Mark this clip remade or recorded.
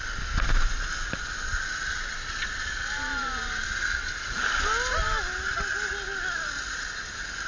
recorded